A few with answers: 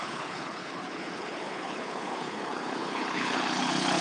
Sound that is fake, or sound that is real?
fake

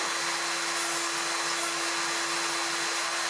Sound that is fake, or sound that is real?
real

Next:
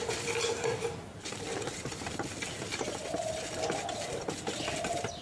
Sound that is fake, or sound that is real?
real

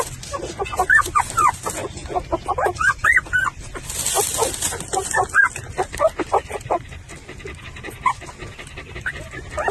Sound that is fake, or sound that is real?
real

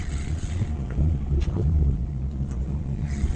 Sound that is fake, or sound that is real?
fake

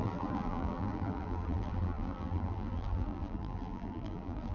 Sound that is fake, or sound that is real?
fake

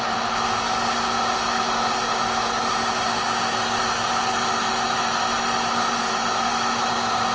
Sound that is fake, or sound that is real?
real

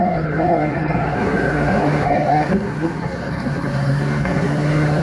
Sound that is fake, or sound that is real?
fake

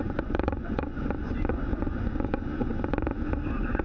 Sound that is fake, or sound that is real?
fake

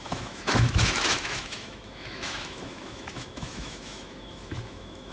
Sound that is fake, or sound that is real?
fake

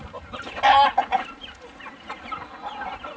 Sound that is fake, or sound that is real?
real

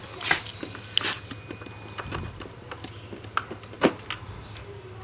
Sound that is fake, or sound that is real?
real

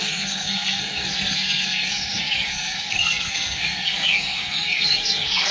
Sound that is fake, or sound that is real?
fake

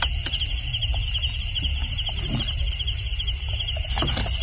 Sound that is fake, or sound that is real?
real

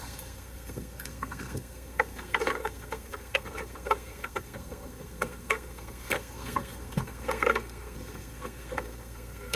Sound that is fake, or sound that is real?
fake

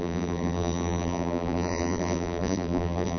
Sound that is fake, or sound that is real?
fake